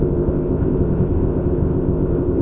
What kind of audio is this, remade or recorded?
remade